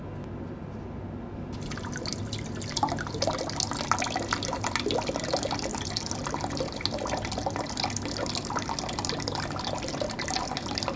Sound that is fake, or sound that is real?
real